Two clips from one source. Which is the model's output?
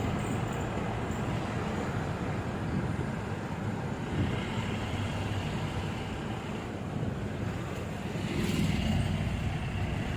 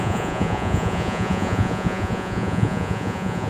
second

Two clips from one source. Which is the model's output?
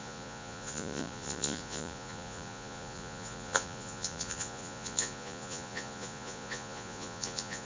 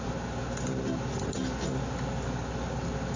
first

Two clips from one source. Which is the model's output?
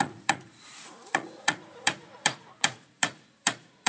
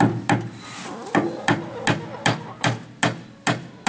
first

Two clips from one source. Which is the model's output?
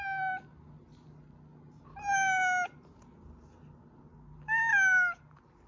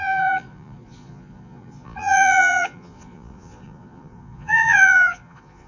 second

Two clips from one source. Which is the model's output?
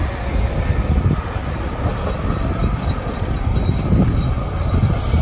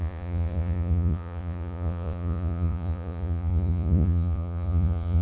second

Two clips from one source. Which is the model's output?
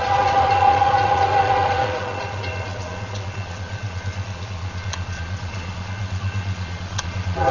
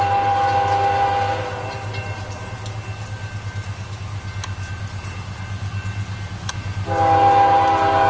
first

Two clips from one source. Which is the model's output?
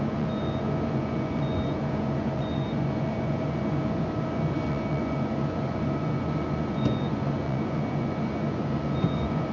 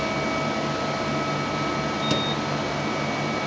first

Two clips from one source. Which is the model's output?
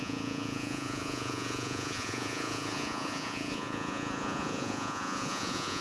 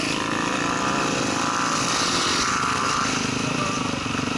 first